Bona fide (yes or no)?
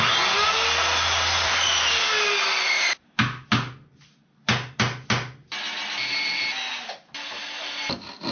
yes